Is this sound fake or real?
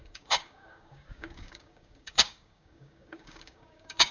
fake